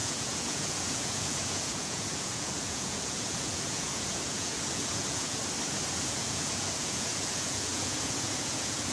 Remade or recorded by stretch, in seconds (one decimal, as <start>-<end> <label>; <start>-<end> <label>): 0.0-5.4 remade; 5.4-5.9 recorded; 5.9-8.9 remade